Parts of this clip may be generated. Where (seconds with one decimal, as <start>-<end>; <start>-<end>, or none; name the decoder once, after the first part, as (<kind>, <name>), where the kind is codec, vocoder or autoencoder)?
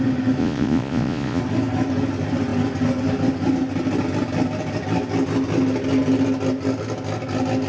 0.4-1.4 (vocoder, Vocos)